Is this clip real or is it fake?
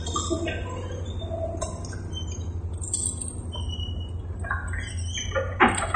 real